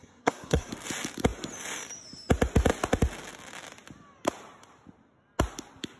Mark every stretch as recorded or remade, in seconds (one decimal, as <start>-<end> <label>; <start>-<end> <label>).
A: 0.0-0.7 remade; 0.7-6.0 recorded